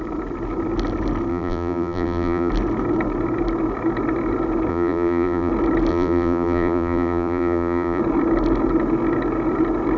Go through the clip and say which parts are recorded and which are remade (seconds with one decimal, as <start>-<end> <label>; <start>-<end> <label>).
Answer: 0.0-1.3 recorded; 1.3-2.5 remade; 2.5-4.7 recorded; 4.7-5.5 remade; 5.5-5.9 recorded; 5.9-8.0 remade; 8.0-10.0 recorded

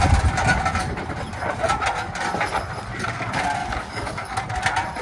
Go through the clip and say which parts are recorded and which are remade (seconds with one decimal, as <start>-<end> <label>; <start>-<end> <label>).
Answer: 0.0-3.6 recorded; 3.6-4.4 remade; 4.4-5.0 recorded

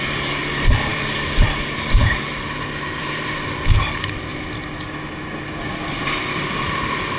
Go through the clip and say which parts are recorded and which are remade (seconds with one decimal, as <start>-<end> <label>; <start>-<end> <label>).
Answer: 0.0-4.3 remade; 4.3-5.9 recorded; 5.9-7.2 remade